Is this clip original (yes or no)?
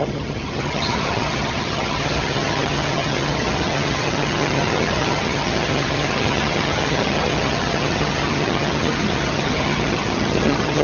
no